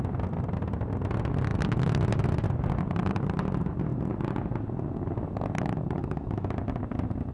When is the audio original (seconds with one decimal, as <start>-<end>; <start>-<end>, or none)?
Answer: 0.0-6.0; 6.5-7.3